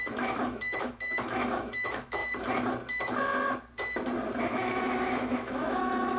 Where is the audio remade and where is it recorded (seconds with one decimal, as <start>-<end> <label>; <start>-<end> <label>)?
0.0-2.2 remade; 2.2-4.4 recorded; 4.4-6.2 remade